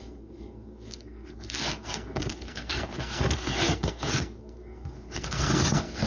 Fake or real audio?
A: fake